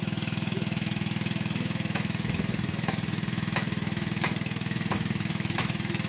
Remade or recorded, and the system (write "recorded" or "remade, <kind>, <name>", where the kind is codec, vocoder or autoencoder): remade, autoencoder, DAC-VAE